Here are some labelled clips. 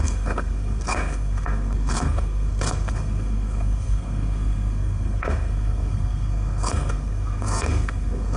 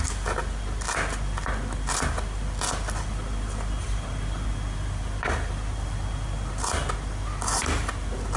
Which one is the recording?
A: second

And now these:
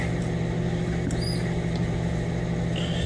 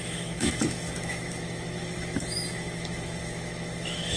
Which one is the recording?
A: first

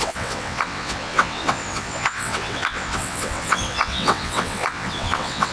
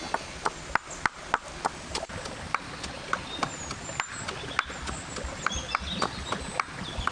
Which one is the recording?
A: second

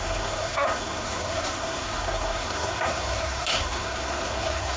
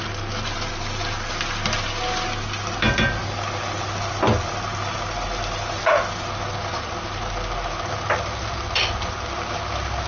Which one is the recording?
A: second